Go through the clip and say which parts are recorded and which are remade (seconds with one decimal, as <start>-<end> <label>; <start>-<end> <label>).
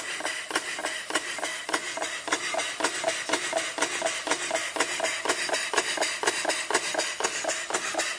0.0-8.2 recorded